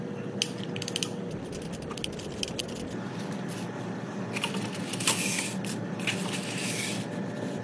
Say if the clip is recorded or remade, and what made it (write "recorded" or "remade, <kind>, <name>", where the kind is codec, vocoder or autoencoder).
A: recorded